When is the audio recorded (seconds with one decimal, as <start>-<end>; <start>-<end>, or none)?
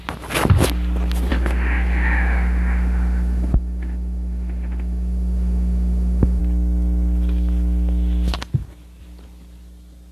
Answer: 0.0-1.3; 6.4-10.1